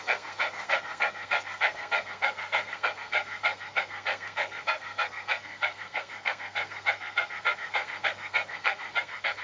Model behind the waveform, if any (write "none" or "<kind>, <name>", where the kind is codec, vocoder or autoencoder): codec, SNAC